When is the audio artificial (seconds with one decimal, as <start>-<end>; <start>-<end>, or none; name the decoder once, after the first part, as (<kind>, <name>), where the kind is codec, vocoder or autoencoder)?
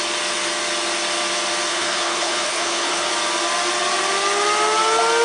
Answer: 1.7-3.1 (codec, HILCodec)